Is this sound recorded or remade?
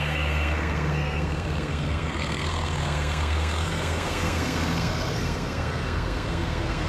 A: remade